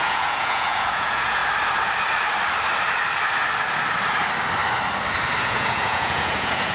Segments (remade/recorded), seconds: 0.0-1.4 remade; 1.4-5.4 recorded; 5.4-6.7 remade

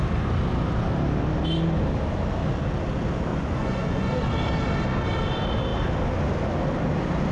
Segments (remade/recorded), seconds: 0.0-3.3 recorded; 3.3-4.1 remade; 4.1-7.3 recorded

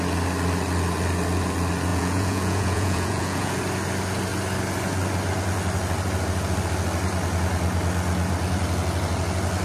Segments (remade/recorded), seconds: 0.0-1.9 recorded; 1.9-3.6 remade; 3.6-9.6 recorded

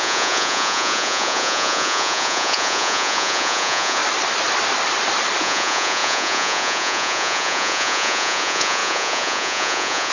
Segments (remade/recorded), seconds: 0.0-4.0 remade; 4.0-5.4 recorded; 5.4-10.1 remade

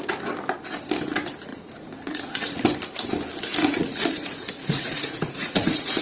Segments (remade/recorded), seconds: 0.0-1.5 recorded; 1.5-2.6 remade; 2.6-3.6 recorded; 3.6-6.0 remade

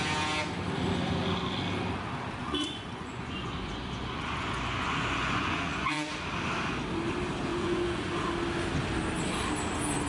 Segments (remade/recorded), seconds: 0.0-2.4 recorded; 2.4-6.1 remade; 6.1-7.5 recorded; 7.5-8.1 remade; 8.1-10.1 recorded